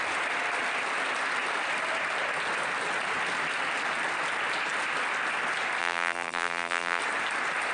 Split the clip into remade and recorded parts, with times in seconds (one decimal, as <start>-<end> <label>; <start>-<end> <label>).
0.0-5.8 recorded; 5.8-7.0 remade; 7.0-7.7 recorded